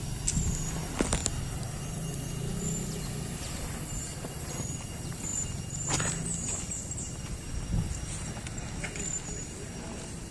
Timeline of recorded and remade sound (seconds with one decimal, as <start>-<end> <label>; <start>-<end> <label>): 0.0-10.3 recorded